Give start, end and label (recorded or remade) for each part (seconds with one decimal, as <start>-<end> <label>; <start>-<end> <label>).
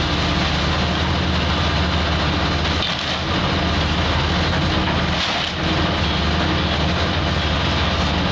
0.0-8.3 recorded